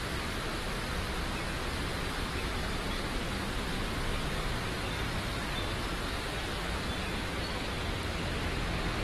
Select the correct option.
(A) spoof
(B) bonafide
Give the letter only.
B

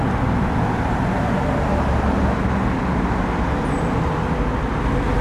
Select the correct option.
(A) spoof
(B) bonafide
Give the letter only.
B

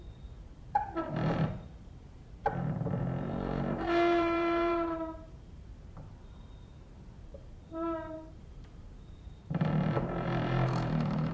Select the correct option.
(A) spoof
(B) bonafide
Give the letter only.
A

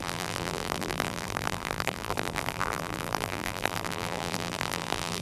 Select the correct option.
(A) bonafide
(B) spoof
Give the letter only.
B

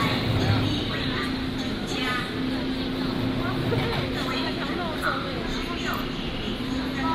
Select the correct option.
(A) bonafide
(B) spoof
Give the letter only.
A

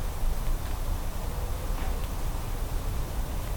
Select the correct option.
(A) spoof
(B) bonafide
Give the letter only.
B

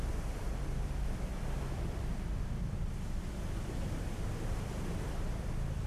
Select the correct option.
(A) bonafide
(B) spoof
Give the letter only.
B